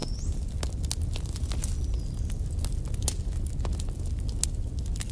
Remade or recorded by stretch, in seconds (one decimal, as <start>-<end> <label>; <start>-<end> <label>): 0.0-5.1 recorded